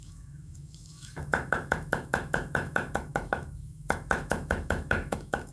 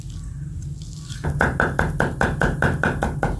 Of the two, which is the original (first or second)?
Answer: second